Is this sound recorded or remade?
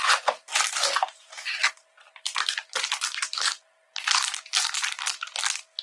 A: recorded